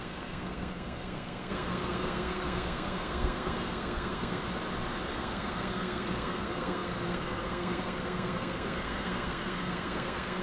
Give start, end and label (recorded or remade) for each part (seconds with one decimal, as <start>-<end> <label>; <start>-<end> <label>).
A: 0.0-4.4 remade; 4.4-5.1 recorded; 5.1-10.4 remade

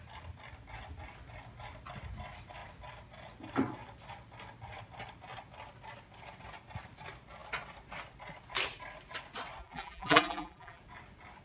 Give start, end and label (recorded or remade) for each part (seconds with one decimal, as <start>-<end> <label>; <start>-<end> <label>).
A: 0.0-9.6 recorded; 9.6-10.8 remade; 10.8-11.4 recorded

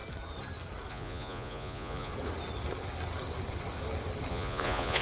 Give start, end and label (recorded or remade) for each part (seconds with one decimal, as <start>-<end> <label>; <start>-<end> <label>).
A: 0.0-0.9 recorded; 0.9-2.1 remade; 2.1-4.3 recorded; 4.3-5.0 remade

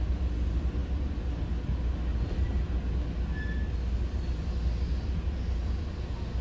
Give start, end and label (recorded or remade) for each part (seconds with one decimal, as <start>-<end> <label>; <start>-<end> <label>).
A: 0.0-6.4 recorded

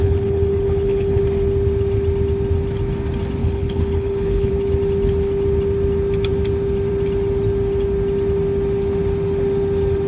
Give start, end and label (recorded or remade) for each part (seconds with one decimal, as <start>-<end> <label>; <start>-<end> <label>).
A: 0.0-1.2 remade; 1.2-3.4 recorded; 3.4-4.5 remade; 4.5-10.1 recorded

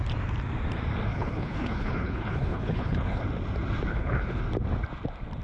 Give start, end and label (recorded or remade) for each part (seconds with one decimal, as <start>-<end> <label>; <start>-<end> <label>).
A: 0.0-1.1 recorded; 1.1-3.2 remade; 3.2-3.9 recorded; 3.9-4.4 remade; 4.4-5.4 recorded

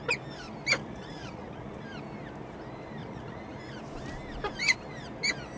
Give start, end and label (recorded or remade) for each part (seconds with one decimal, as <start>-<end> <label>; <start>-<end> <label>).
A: 0.0-0.8 recorded; 0.8-1.8 remade; 1.8-3.0 recorded; 3.0-3.6 remade; 3.6-5.6 recorded